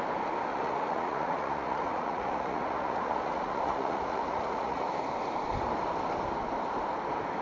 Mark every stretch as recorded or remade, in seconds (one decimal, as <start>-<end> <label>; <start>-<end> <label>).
0.0-0.5 recorded; 0.5-4.9 remade; 4.9-7.4 recorded